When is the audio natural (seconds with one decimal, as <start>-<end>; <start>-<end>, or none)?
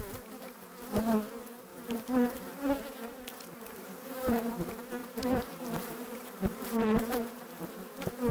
0.0-1.7; 4.5-5.0; 7.6-8.3